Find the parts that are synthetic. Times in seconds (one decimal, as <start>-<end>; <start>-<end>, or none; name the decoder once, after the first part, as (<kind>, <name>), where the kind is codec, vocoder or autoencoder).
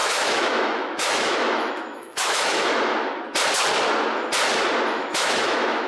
0.0-2.9 (autoencoder, DAC-VAE); 4.9-5.9